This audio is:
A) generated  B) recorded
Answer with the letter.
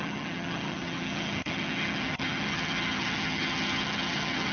A